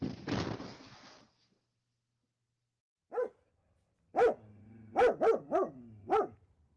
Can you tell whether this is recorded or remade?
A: recorded